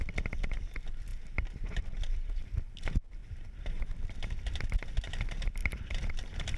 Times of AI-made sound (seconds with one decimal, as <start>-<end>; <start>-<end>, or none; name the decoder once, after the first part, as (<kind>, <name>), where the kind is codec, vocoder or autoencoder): none